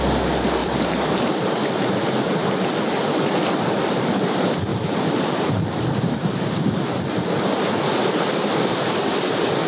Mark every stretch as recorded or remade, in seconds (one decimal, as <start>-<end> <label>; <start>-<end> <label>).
0.0-0.6 recorded; 0.6-1.7 remade; 1.7-4.7 recorded; 4.7-7.6 remade; 7.6-8.0 recorded; 8.0-8.9 remade; 8.9-9.7 recorded